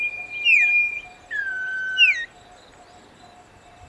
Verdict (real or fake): real